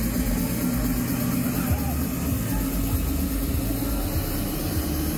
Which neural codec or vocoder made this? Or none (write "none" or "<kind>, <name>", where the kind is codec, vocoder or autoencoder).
none